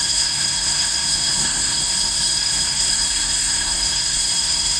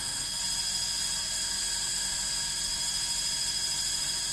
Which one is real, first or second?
second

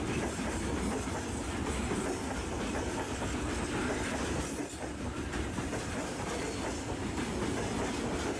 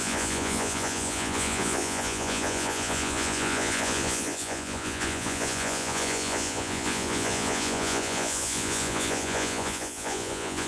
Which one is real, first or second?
first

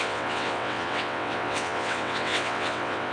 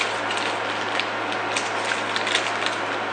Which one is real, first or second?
second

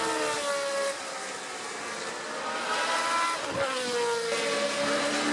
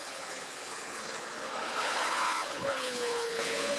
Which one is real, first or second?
first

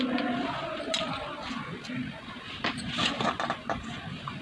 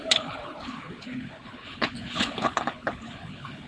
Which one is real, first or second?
first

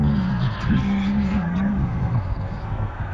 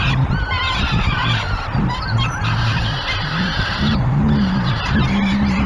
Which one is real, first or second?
second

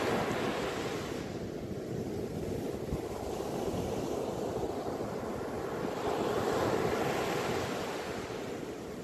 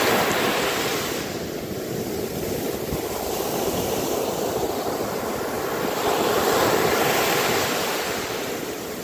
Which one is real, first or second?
first